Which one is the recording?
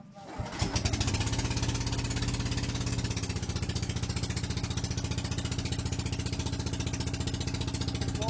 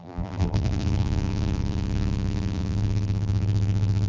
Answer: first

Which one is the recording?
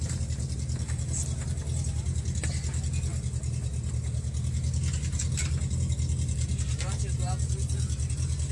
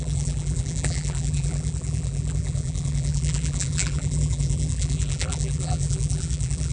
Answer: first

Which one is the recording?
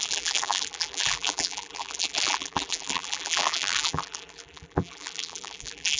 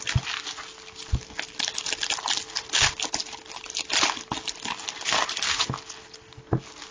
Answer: second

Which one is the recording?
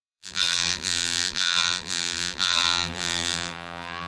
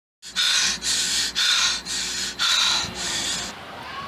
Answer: second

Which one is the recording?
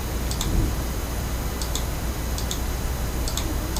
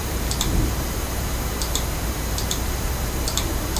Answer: first